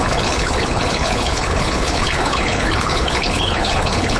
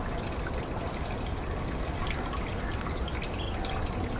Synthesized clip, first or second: first